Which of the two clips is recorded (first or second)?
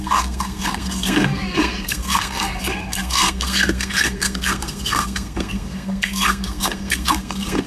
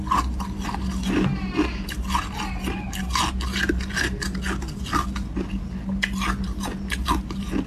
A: second